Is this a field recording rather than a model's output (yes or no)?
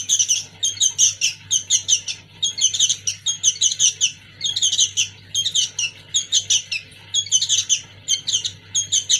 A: yes